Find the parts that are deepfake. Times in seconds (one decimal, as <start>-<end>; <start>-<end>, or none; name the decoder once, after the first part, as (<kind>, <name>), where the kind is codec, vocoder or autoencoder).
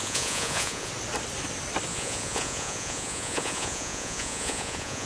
0.0-0.9 (vocoder, Vocos); 1.9-5.1